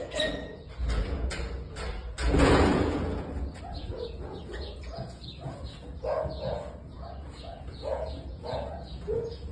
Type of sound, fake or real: fake